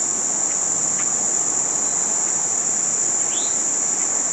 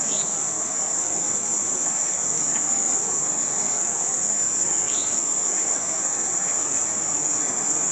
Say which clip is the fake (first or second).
second